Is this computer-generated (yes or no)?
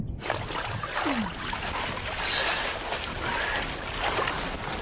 no